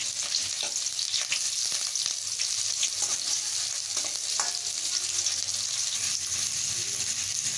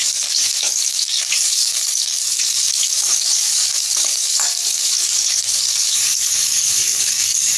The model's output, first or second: second